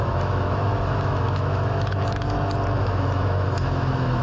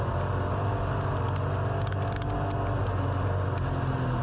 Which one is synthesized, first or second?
first